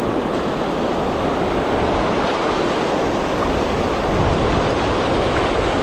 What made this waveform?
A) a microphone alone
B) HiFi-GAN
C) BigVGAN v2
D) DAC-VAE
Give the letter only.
A